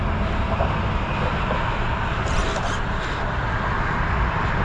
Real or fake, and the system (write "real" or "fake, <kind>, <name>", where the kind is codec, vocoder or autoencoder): real